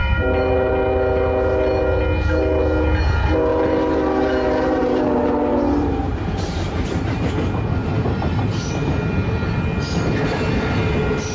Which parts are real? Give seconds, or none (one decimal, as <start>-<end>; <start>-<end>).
0.7-3.5; 7.3-7.8; 8.7-11.3